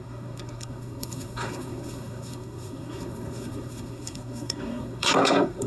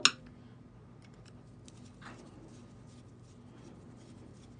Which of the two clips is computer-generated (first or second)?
first